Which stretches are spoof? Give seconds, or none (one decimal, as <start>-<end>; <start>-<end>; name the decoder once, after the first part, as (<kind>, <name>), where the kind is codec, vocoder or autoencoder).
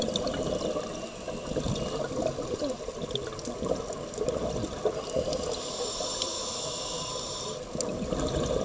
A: 6.3-7.0 (autoencoder, DAC-VAE)